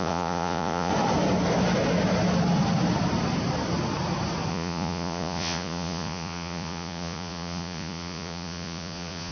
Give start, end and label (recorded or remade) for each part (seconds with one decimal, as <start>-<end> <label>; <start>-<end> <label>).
0.0-0.9 remade; 0.9-4.5 recorded; 4.5-9.3 remade